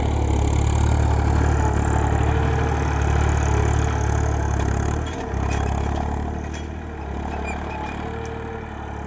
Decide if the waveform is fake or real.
real